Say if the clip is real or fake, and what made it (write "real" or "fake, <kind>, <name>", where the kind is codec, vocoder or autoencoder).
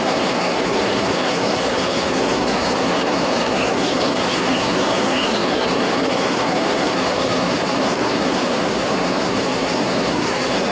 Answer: fake, codec, SNAC